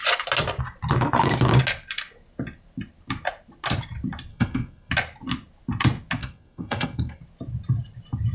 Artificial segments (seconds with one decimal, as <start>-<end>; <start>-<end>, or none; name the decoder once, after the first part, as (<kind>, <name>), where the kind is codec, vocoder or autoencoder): 4.3-4.9 (codec, SNAC); 6.2-7.2